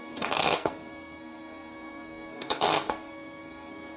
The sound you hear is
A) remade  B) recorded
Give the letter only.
A